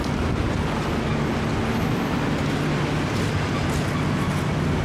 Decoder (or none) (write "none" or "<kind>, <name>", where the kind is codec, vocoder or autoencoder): none